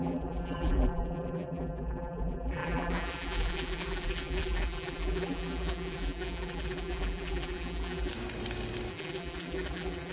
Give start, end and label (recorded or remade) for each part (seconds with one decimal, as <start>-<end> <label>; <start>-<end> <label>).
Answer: 0.0-8.1 remade; 8.1-8.9 recorded; 8.9-10.1 remade